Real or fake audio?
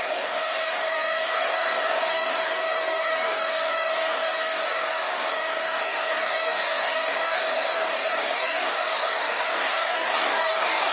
fake